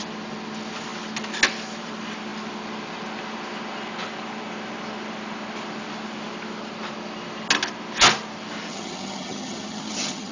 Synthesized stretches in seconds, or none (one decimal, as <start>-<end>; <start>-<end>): 8.7-10.3